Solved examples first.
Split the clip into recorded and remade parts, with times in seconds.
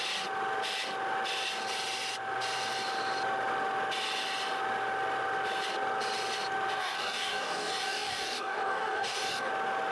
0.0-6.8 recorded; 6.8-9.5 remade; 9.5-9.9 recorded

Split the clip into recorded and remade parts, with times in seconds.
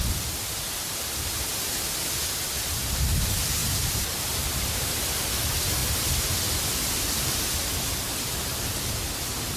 0.0-3.6 recorded; 3.6-4.8 remade; 4.8-9.6 recorded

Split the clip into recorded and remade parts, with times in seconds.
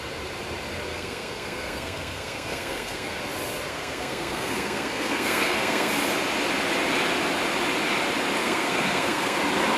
0.0-0.9 recorded; 0.9-3.2 remade; 3.2-3.7 recorded; 3.7-5.9 remade; 5.9-8.4 recorded; 8.4-9.4 remade; 9.4-9.8 recorded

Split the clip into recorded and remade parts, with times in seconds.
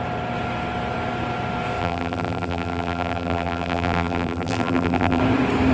0.0-1.8 recorded; 1.8-5.2 remade; 5.2-5.7 recorded